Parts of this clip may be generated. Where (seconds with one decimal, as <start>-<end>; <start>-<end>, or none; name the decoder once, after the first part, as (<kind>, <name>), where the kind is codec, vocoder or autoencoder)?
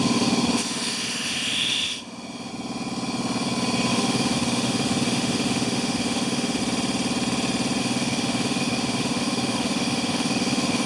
0.0-2.5 (autoencoder, DAC-VAE); 3.9-6.6; 7.8-10.9